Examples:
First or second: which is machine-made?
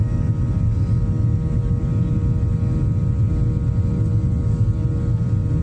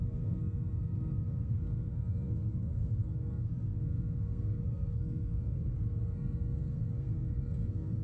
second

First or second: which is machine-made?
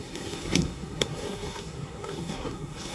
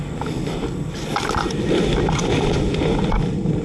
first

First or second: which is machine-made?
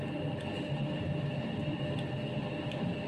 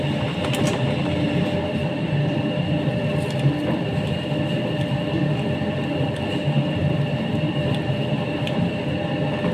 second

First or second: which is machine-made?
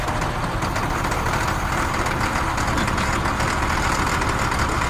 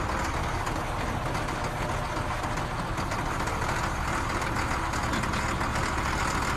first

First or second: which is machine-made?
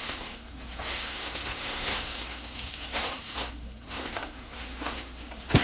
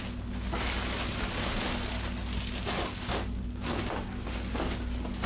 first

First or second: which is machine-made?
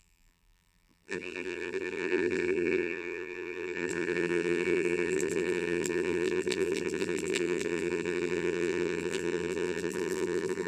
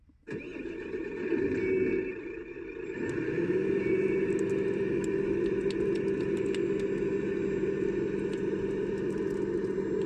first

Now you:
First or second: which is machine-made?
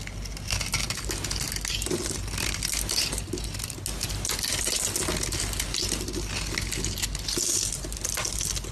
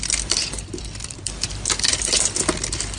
second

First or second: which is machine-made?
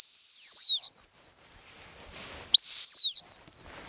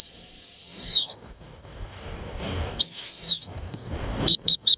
second